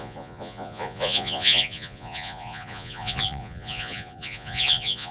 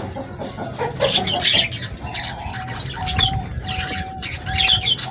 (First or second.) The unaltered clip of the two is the second